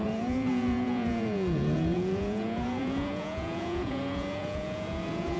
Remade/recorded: remade